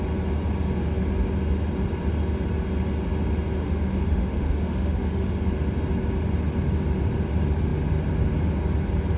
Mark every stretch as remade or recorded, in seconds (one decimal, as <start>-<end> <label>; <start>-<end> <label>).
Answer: 0.0-3.6 recorded; 3.6-5.4 remade; 5.4-9.2 recorded